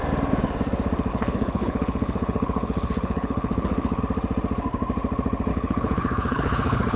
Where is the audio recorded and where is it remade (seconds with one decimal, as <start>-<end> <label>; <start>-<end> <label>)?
0.0-1.1 recorded; 1.1-4.0 remade; 4.0-5.5 recorded; 5.5-7.0 remade